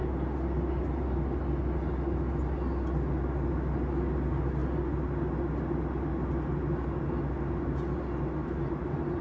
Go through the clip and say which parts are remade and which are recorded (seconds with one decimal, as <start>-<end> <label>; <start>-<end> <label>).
0.0-9.2 recorded